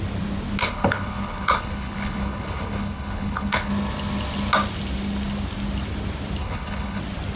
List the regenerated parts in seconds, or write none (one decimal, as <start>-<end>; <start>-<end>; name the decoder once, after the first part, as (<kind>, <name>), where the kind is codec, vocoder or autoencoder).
0.6-3.7 (codec, HILCodec); 6.4-7.0